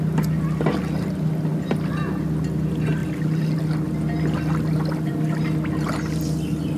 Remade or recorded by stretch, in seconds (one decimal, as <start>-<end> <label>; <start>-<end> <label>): 0.0-6.8 recorded